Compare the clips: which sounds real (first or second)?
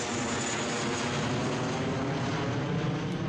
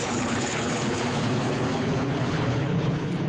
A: first